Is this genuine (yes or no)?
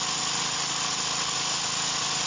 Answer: yes